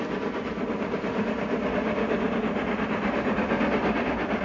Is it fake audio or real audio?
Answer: real